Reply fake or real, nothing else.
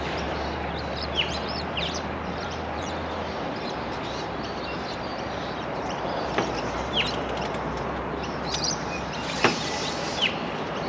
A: fake